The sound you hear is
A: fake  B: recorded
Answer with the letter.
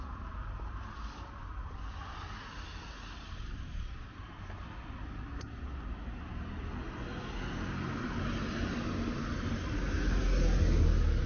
B